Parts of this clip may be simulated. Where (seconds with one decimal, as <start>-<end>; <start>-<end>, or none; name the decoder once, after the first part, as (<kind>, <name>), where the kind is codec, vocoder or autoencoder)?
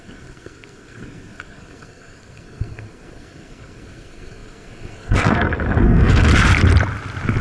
0.0-6.3 (codec, SNAC)